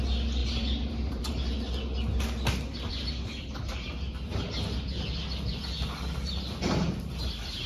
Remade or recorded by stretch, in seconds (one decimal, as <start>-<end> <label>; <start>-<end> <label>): 0.0-0.4 recorded; 0.4-1.3 remade; 1.3-7.7 recorded